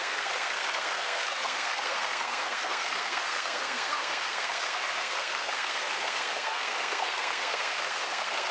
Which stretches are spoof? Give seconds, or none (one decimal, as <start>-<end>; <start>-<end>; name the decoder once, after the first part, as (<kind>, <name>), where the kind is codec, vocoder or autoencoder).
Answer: 0.0-8.5 (codec, SNAC)